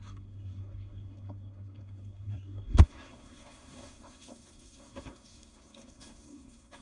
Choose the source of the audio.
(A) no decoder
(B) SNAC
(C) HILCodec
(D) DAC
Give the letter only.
B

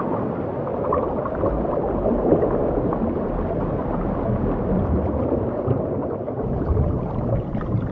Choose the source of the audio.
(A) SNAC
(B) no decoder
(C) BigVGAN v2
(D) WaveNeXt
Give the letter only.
B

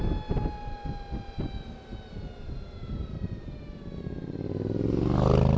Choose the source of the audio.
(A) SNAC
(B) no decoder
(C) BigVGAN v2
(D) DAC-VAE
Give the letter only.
B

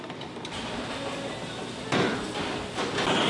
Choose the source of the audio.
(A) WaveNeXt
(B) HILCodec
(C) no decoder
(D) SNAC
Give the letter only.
C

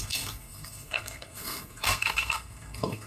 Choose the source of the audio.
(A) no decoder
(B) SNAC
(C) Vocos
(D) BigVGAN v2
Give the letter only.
B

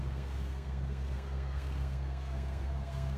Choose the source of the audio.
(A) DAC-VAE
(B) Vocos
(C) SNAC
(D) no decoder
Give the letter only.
C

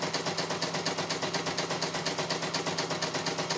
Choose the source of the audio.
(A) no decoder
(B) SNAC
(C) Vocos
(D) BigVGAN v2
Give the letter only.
A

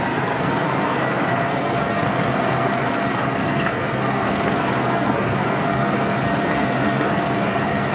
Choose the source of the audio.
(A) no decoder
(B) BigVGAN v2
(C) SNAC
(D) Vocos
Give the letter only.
C